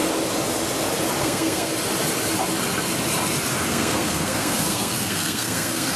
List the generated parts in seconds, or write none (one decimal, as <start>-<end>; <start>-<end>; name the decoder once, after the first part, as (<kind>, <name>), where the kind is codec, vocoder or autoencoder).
1.2-1.7 (codec, SNAC); 3.7-6.0